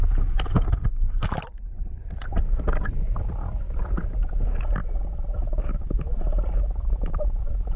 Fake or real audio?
real